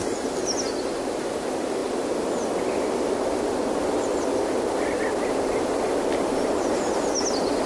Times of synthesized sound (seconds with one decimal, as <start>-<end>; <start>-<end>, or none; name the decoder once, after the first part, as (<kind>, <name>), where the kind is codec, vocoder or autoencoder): none